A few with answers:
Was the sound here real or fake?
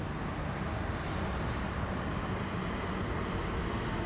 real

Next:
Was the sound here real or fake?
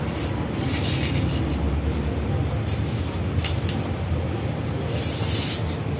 real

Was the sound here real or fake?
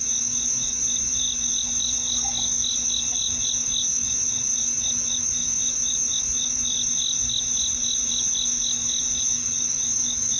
fake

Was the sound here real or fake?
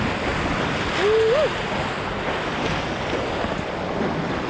real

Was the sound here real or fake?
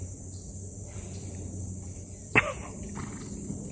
real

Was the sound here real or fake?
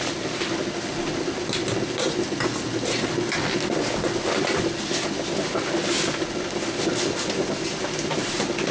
real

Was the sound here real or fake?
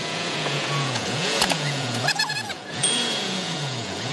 fake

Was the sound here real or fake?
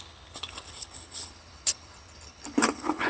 fake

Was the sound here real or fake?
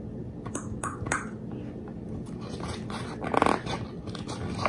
real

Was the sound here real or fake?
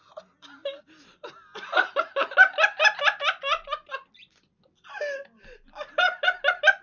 real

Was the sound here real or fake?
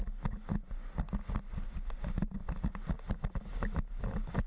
real